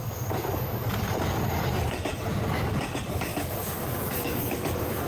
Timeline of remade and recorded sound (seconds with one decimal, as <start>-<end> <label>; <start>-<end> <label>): 0.0-2.1 remade; 2.1-2.7 recorded; 2.7-5.1 remade